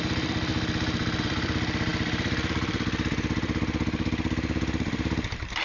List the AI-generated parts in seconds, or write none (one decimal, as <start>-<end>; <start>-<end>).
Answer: 0.0-0.5; 1.2-5.6